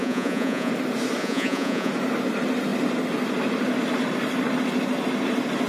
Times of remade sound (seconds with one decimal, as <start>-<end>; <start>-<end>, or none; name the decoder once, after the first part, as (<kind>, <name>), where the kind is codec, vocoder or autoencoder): 0.0-0.7 (vocoder, Vocos); 1.2-1.9